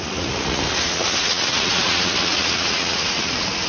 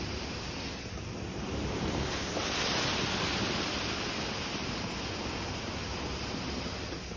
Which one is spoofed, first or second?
first